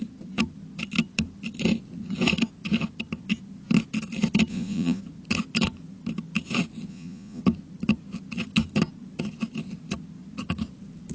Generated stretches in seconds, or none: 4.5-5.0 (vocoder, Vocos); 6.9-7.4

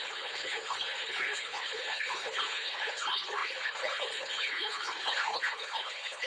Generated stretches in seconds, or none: 0.0-6.3 (codec, HILCodec)

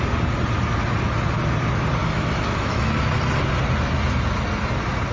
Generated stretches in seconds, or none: 2.0-2.9 (autoencoder, DAC-VAE)